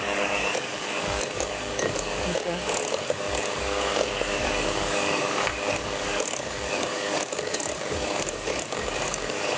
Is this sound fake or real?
fake